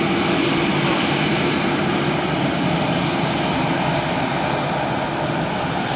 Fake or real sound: real